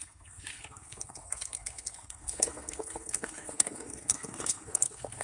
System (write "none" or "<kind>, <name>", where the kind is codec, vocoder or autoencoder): codec, SNAC